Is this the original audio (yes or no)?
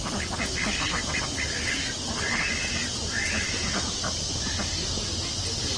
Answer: yes